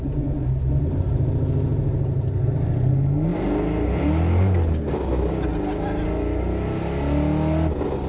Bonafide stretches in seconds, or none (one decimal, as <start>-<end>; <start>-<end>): 0.0-8.1